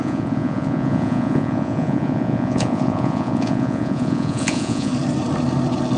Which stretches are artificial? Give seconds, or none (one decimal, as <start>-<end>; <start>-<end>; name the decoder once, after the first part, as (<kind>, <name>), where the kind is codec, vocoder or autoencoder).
0.0-4.9 (vocoder, Vocos)